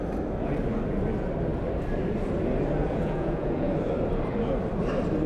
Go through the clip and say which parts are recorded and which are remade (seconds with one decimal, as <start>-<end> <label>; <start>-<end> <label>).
0.0-2.8 recorded; 2.8-3.7 remade; 3.7-5.3 recorded